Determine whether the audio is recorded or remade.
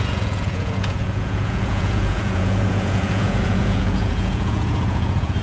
remade